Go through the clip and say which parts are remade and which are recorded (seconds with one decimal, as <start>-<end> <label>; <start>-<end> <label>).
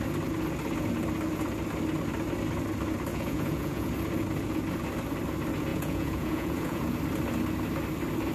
0.0-3.1 recorded; 3.1-3.9 remade; 3.9-5.7 recorded; 5.7-7.0 remade; 7.0-8.3 recorded